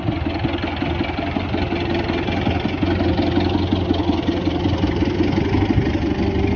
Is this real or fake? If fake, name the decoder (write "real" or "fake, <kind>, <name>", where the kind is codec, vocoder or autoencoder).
real